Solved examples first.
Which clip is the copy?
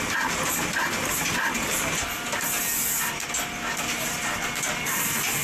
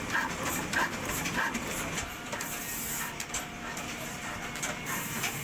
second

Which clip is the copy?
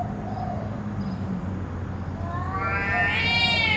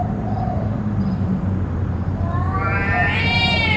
second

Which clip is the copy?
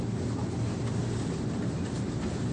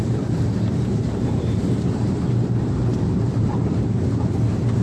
second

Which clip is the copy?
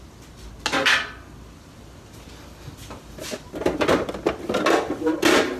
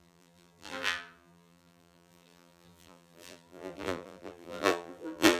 second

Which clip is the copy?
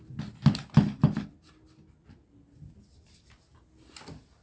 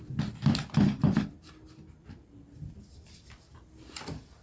second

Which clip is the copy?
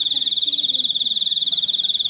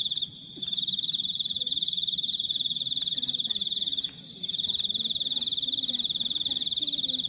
second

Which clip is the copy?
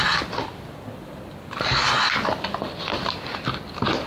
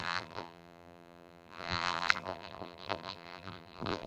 second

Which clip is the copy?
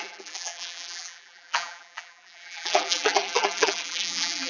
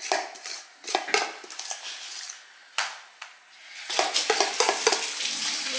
first